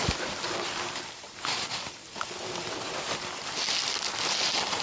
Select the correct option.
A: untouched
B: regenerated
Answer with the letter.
A